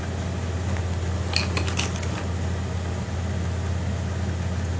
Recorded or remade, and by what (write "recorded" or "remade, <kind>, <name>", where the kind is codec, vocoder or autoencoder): recorded